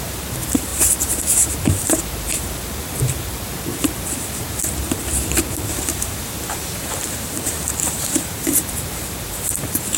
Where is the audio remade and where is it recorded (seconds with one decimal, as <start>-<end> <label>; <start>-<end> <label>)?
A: 0.0-10.0 remade